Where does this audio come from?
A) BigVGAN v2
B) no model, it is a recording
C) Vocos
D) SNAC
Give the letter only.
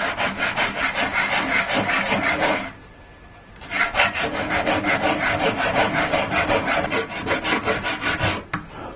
B